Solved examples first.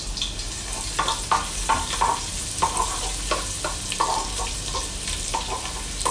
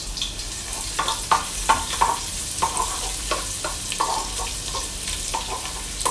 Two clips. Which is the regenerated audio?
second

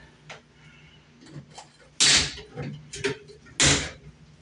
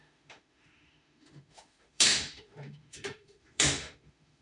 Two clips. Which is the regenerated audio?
second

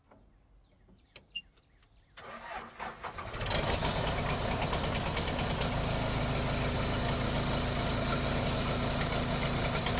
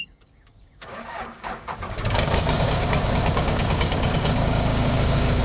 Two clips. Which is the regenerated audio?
second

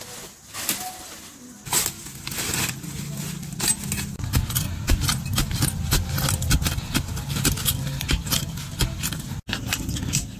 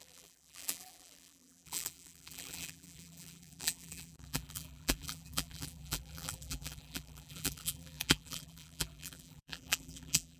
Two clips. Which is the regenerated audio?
second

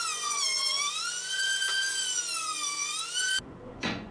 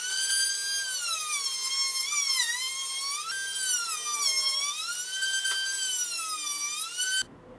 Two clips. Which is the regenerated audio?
first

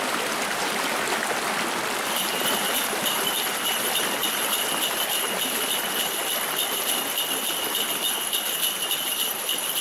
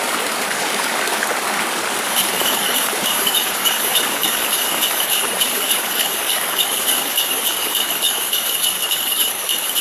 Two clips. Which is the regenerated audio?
second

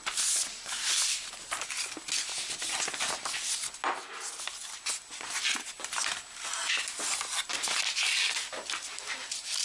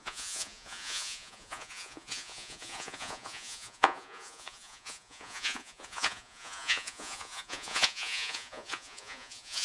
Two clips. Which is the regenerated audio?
second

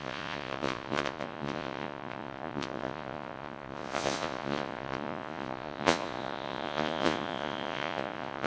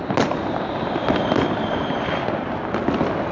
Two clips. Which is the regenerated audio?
first